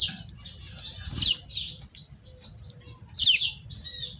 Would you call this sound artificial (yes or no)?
no